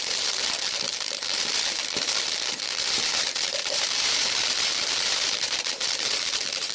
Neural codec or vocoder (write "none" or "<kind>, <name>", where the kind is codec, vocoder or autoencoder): vocoder, BigVGAN v2